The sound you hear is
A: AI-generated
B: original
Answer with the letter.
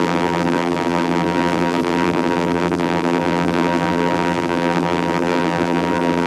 A